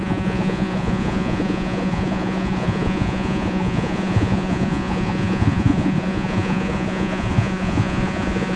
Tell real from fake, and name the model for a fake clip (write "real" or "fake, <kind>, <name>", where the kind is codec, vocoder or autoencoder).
fake, vocoder, Vocos